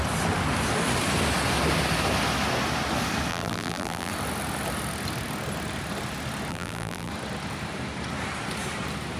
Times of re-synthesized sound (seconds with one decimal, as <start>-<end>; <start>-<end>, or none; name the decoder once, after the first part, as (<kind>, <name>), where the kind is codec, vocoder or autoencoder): 3.3-4.1 (vocoder, BigVGAN v2); 6.5-7.1